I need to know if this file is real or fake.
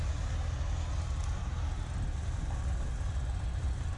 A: real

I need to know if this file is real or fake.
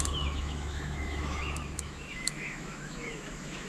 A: fake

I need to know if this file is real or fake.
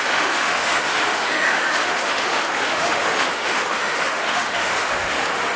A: fake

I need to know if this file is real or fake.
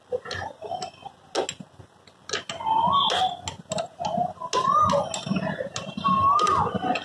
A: real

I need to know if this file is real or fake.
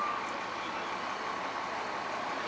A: real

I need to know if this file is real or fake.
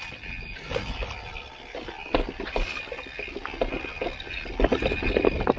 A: real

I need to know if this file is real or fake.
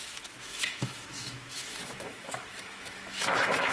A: fake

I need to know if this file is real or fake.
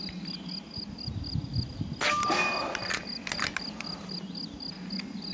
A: real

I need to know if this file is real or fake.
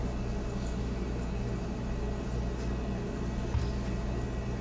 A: real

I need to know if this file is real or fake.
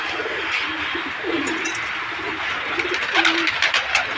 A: real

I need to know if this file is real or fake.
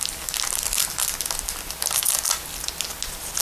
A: real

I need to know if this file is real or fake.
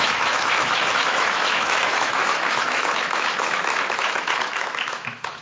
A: fake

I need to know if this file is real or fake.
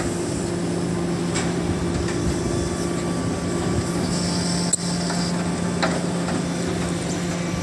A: real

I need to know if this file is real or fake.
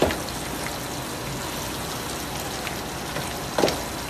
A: real